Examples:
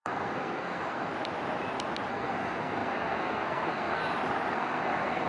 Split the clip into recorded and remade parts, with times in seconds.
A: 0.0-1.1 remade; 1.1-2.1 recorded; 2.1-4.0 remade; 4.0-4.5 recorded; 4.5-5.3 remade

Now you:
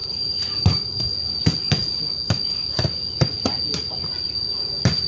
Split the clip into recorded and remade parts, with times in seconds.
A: 0.0-0.9 remade; 0.9-5.1 recorded

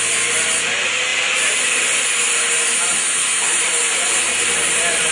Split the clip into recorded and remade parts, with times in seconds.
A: 0.0-5.1 recorded

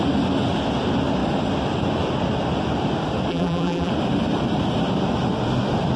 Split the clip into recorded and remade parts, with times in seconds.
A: 0.0-3.3 recorded; 3.3-3.9 remade; 3.9-6.0 recorded

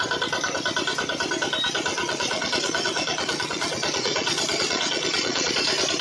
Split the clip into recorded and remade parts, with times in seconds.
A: 0.0-1.9 recorded; 1.9-5.5 remade; 5.5-6.0 recorded